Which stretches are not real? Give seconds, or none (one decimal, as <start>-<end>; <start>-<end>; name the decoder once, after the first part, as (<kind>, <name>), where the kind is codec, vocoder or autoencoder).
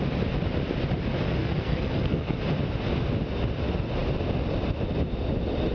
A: 1.4-2.4 (codec, SNAC)